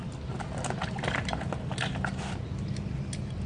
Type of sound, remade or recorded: recorded